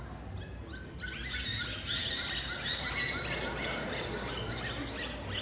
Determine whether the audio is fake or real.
real